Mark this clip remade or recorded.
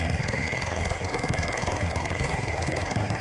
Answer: remade